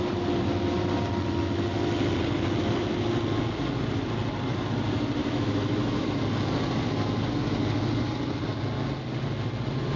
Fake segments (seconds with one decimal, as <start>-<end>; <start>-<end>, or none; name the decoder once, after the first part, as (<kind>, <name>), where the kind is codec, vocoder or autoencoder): 5.2-6.2 (autoencoder, DAC-VAE)